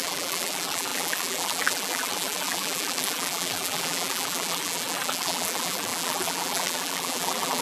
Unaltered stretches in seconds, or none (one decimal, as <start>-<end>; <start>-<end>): none